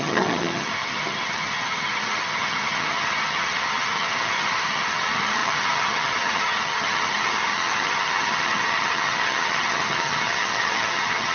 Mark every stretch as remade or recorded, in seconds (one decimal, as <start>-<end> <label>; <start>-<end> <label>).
0.0-11.3 remade